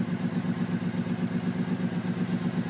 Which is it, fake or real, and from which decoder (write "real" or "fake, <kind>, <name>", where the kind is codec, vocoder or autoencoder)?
real